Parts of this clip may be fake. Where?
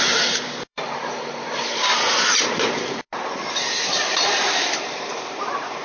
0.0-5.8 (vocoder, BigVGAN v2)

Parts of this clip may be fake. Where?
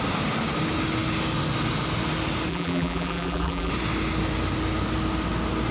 2.5-3.7 (vocoder, BigVGAN v2)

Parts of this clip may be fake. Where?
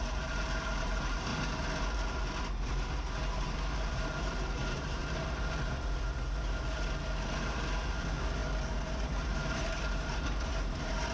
0.0-1.3 (vocoder, BigVGAN v2); 3.9-5.0; 7.9-11.1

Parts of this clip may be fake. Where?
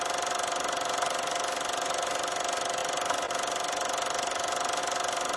none